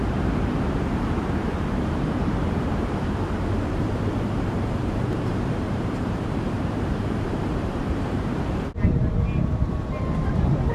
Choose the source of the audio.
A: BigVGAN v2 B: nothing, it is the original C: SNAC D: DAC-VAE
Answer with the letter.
A